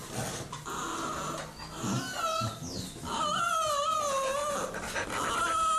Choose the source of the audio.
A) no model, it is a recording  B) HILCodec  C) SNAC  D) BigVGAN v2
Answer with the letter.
A